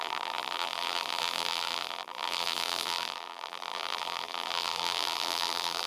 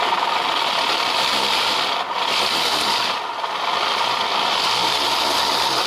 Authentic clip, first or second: second